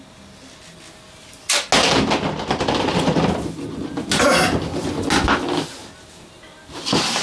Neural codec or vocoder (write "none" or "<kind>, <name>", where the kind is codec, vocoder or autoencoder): none